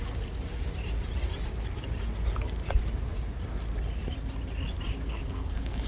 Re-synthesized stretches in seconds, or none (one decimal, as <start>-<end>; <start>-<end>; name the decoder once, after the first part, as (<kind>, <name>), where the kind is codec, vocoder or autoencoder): 4.9-5.9 (codec, SNAC)